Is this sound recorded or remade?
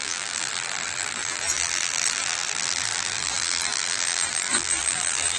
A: remade